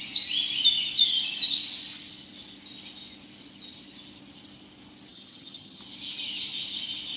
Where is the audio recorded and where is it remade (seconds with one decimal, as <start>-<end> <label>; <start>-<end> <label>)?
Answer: 0.0-5.1 recorded; 5.1-5.8 remade; 5.8-7.2 recorded